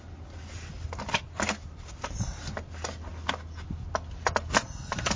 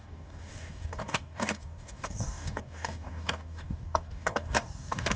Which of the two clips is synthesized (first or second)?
second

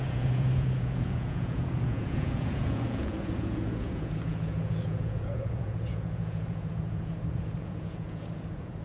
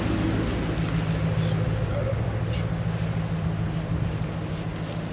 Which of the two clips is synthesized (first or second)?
first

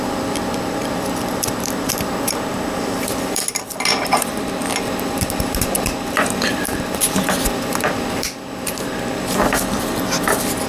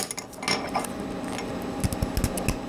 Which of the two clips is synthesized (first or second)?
first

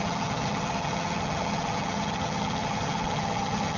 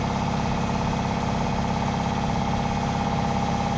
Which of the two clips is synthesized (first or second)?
first